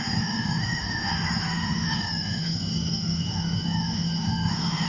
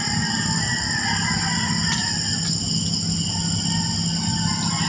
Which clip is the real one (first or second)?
second